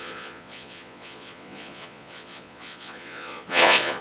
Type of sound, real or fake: fake